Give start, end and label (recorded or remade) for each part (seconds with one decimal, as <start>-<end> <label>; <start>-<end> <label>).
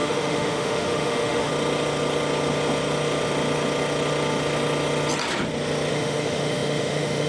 0.0-1.5 remade; 1.5-5.9 recorded; 5.9-7.3 remade